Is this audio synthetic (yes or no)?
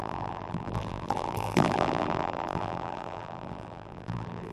yes